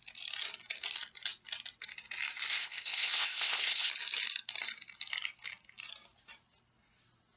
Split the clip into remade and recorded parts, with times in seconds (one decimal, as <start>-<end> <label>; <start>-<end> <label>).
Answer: 0.0-2.5 recorded; 2.5-3.9 remade; 3.9-7.4 recorded